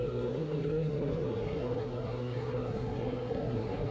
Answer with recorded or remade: remade